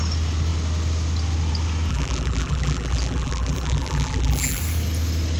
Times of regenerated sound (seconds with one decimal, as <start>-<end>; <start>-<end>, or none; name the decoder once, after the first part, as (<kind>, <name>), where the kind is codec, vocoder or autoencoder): 1.9-4.6 (vocoder, BigVGAN v2)